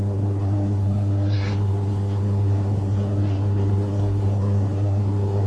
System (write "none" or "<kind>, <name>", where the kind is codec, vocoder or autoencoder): codec, SNAC